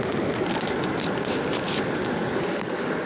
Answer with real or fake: real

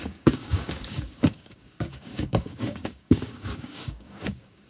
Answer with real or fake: fake